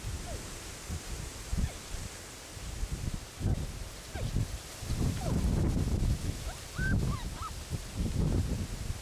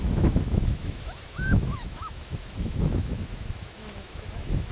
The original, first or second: first